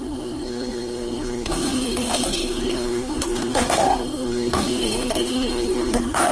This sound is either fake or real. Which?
fake